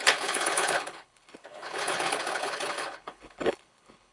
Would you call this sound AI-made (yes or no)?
yes